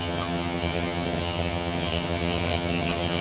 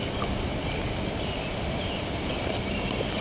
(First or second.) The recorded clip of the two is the second